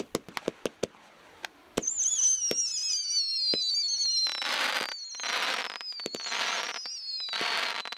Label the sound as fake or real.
real